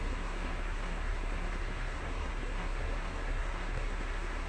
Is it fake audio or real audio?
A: fake